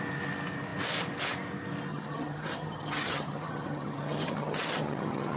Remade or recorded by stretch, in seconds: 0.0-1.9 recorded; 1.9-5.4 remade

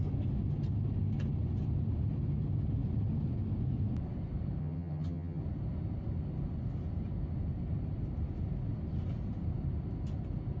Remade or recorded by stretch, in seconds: 0.0-4.6 recorded; 4.6-5.4 remade; 5.4-10.6 recorded